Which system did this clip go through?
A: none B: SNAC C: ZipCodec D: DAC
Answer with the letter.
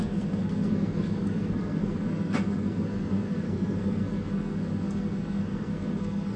B